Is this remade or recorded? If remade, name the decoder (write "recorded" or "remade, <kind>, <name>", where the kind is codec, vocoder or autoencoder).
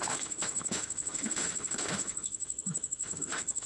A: remade, autoencoder, DAC-VAE